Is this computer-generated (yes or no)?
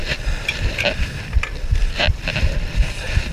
no